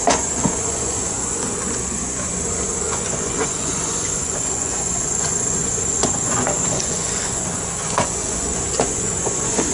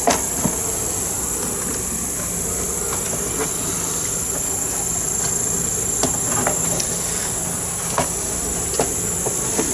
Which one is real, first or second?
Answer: second